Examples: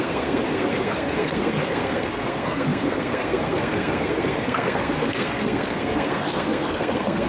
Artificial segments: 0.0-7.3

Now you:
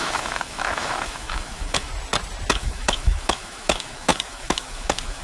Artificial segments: 0.0-1.9; 2.5-5.2

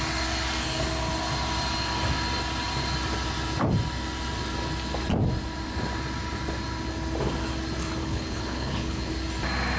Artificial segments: 8.0-9.1